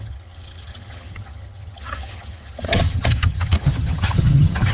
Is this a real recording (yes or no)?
no